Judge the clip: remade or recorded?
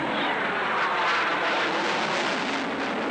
recorded